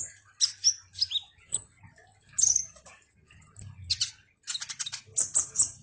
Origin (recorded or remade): recorded